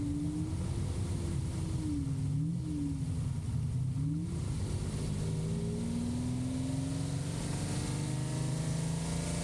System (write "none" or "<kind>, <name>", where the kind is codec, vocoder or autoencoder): none